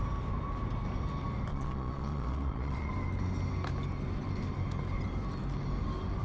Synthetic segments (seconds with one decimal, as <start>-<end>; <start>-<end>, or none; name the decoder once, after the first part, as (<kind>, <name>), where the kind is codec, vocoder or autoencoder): 1.5-2.9 (vocoder, Vocos)